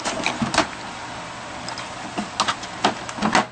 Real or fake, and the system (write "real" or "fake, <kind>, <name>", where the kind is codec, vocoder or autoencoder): real